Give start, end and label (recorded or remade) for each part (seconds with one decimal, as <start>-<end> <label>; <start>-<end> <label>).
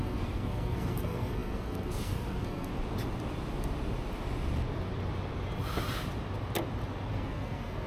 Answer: 0.0-2.7 remade; 2.7-7.1 recorded; 7.1-7.9 remade